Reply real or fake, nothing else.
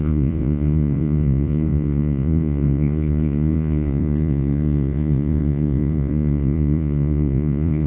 fake